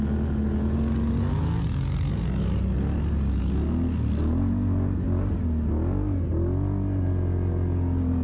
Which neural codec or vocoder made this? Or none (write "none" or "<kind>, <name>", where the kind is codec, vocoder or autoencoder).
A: none